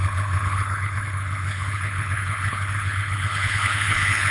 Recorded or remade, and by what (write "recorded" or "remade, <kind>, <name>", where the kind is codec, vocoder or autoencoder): remade, codec, HILCodec